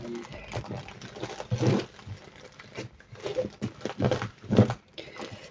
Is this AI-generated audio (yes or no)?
no